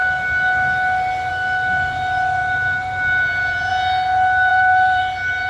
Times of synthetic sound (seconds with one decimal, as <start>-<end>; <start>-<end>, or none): 2.4-3.7; 4.5-5.0

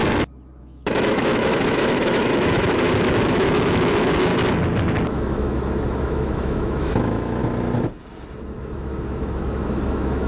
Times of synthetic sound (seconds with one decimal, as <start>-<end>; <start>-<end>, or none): 0.6-4.3; 5.1-7.4; 8.6-10.3

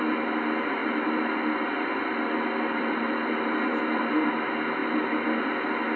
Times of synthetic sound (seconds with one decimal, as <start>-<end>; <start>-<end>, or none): 0.8-3.8

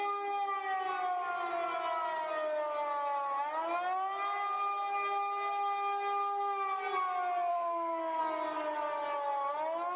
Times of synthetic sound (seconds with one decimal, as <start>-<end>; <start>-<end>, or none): 7.5-8.2

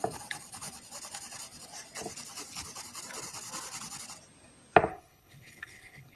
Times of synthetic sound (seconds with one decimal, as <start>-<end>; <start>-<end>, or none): 4.9-6.2

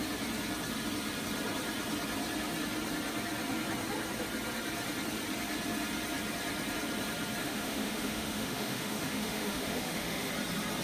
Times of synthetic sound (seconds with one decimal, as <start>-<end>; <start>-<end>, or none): 7.4-10.3

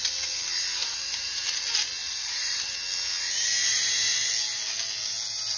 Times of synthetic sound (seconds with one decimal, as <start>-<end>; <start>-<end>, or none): 0.8-1.4; 2.0-2.6; 3.7-4.3

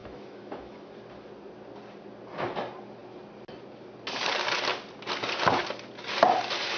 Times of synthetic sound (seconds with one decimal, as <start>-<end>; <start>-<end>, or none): 0.0-0.9